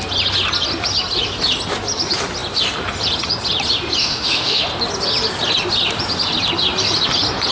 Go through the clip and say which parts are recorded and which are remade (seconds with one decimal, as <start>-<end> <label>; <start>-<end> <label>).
0.0-4.0 recorded; 4.0-4.6 remade; 4.6-7.5 recorded